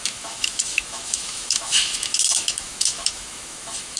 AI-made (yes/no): yes